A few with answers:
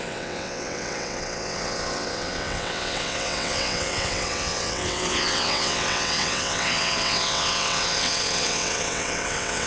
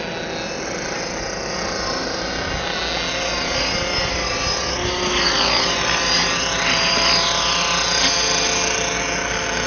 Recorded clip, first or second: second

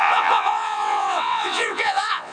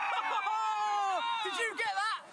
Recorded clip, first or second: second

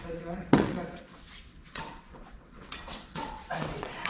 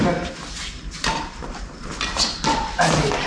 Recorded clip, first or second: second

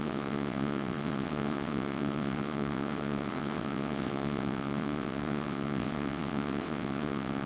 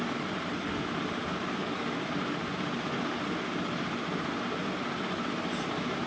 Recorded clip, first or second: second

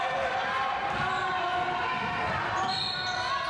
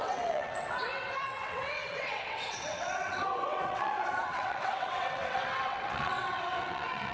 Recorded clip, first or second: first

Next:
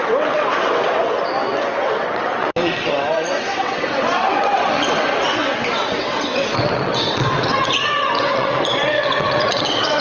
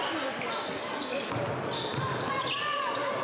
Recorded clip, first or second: second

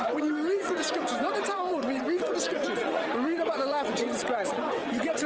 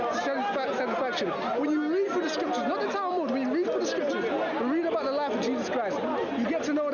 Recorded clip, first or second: second